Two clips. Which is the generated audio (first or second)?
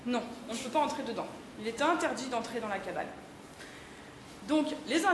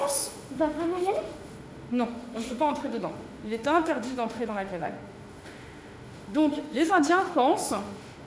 second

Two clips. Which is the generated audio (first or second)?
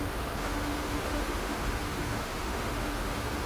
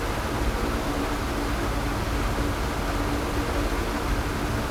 first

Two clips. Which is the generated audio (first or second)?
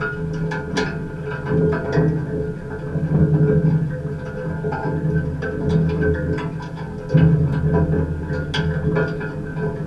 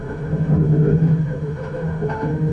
second